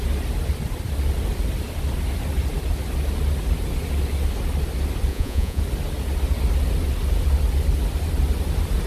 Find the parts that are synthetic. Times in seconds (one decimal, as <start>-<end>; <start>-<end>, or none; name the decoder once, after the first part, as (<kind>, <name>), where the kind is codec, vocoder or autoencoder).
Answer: 5.1-5.6 (vocoder, Vocos)